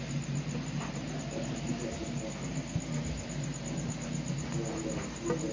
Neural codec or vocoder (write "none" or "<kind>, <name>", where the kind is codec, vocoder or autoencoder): none